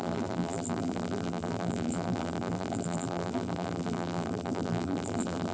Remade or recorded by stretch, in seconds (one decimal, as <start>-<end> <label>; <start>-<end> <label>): 0.0-5.5 remade

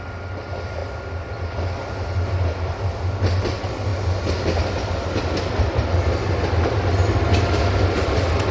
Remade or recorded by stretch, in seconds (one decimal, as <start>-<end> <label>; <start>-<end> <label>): 0.0-8.5 recorded